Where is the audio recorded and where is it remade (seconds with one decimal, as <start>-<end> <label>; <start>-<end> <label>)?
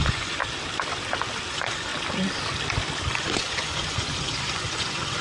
0.0-0.4 remade; 0.4-1.5 recorded; 1.5-1.9 remade; 1.9-3.1 recorded; 3.1-5.2 remade